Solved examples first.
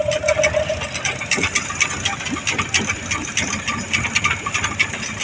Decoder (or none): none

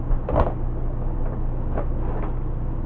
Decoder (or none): none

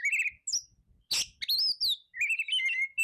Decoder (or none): none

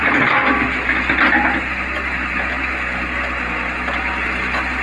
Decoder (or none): none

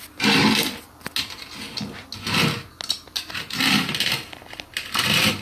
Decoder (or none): none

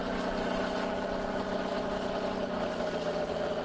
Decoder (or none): none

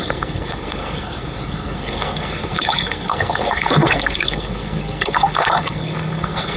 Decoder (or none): codec, SNAC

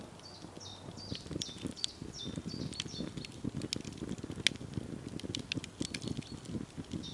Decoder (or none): none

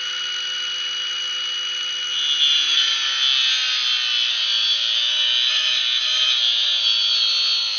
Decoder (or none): none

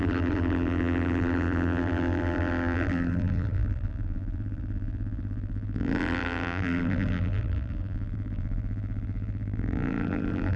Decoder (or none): vocoder, BigVGAN v2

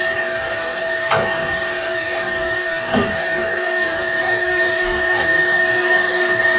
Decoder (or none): codec, DAC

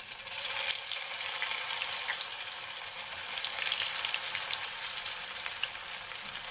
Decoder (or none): vocoder, BigVGAN v2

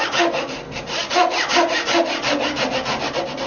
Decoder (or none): none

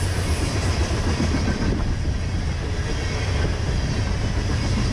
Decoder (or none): vocoder, BigVGAN v2